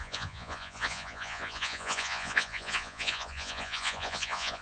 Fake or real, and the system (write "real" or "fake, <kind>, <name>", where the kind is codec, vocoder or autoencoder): fake, vocoder, Vocos